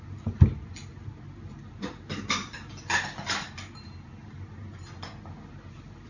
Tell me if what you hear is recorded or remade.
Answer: recorded